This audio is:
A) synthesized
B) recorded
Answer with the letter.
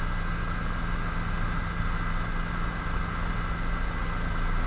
B